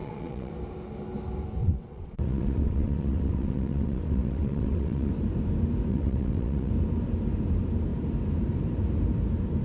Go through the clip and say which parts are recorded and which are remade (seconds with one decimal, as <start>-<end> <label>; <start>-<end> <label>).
0.0-0.5 remade; 0.5-1.6 recorded; 1.6-5.1 remade; 5.1-5.9 recorded; 5.9-6.7 remade; 6.7-9.6 recorded